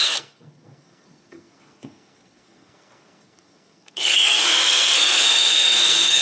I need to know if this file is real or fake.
fake